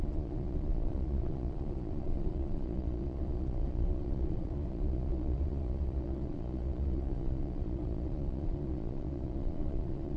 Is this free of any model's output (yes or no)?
no